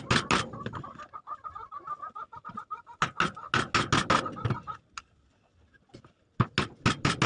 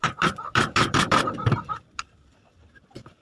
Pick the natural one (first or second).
first